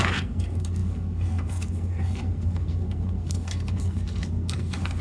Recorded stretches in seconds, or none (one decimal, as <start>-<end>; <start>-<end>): none